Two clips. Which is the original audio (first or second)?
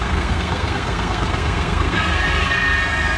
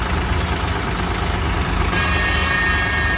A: second